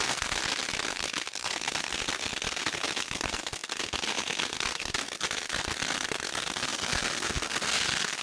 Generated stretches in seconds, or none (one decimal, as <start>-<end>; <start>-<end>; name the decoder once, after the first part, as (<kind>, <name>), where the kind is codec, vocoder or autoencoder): 0.0-0.4 (codec, SNAC); 0.9-8.2